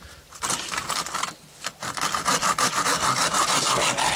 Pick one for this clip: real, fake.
real